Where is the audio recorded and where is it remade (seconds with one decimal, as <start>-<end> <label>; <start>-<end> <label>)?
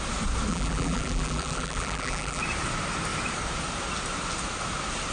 0.0-0.5 recorded; 0.5-2.4 remade; 2.4-5.1 recorded